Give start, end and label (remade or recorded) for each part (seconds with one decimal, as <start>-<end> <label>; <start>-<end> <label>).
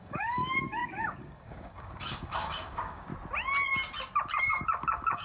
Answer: 0.0-3.1 remade; 3.1-4.4 recorded; 4.4-5.2 remade